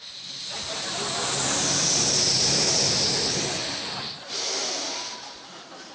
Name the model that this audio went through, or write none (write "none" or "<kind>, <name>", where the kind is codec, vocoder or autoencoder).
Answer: none